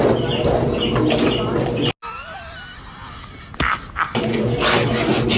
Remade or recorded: recorded